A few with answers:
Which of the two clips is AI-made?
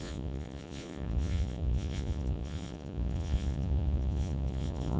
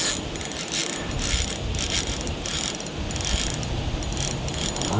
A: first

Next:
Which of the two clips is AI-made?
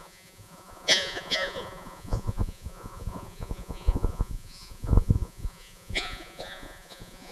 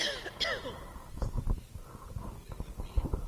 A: first